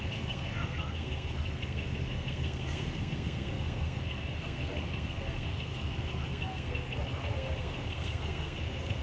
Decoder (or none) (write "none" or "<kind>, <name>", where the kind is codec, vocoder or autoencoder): codec, SNAC